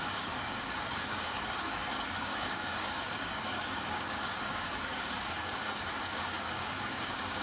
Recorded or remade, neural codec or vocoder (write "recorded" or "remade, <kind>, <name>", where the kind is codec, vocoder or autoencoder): remade, codec, DAC